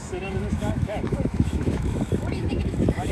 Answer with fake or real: fake